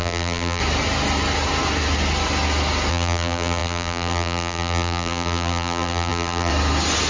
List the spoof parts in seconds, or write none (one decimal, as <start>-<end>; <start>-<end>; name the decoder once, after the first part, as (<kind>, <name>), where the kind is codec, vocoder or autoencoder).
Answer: 0.0-0.6 (vocoder, BigVGAN v2); 2.9-6.5